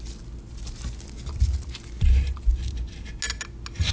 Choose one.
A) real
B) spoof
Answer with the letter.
A